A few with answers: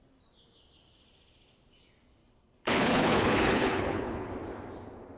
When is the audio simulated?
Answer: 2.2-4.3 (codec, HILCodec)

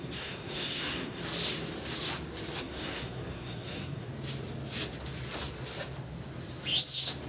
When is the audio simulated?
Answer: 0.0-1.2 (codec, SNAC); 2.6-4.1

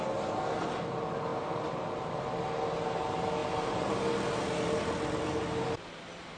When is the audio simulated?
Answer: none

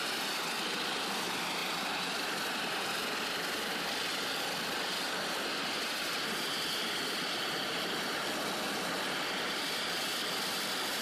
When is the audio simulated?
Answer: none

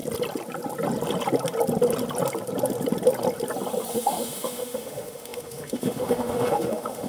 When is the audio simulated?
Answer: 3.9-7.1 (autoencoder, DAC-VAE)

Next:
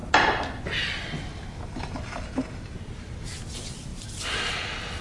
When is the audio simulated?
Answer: 3.9-4.5 (vocoder, BigVGAN v2)